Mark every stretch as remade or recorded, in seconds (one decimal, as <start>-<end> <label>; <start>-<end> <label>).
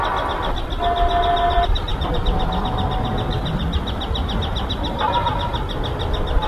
0.0-6.5 recorded